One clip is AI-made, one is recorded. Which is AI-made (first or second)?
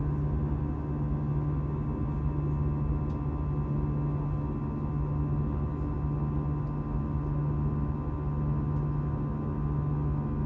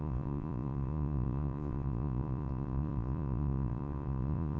second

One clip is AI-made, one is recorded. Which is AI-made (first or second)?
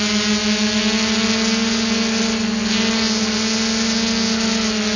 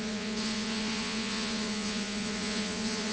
second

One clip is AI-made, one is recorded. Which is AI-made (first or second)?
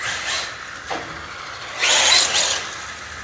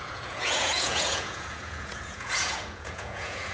second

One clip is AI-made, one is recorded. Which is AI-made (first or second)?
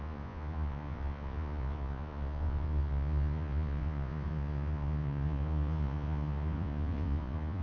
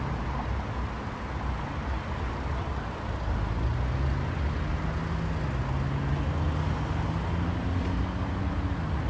first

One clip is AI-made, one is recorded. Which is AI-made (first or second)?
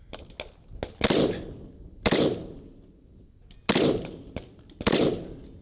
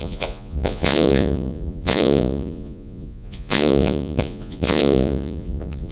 second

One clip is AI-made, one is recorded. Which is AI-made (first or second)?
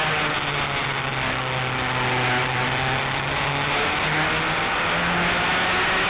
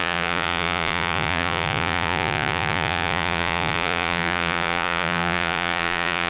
second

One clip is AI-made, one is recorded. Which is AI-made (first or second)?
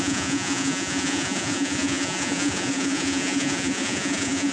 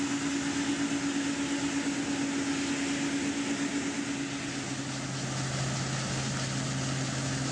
first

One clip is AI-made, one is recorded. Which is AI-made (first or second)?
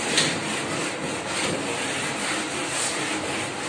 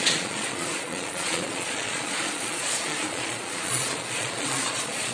second